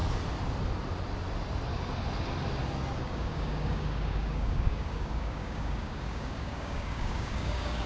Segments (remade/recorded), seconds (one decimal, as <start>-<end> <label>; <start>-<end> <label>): 0.0-3.0 recorded; 3.0-7.9 remade